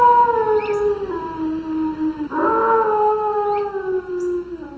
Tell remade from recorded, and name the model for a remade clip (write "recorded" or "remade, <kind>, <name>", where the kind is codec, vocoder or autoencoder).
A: recorded